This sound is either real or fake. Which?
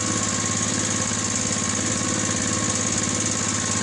real